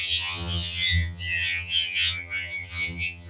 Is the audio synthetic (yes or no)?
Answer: yes